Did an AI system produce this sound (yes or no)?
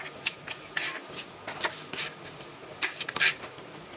yes